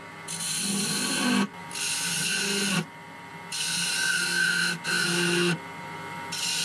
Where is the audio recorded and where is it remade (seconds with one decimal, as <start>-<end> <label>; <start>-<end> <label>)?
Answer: 0.0-6.6 recorded